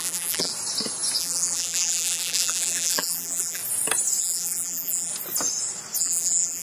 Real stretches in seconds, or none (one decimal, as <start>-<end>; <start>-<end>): 0.5-1.2; 3.6-4.2; 5.1-6.0